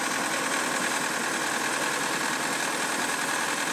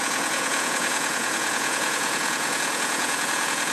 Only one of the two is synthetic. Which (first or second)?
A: second